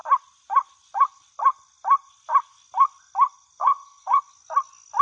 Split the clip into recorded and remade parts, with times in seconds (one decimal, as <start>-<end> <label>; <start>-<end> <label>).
0.0-3.6 recorded; 3.6-4.2 remade; 4.2-5.0 recorded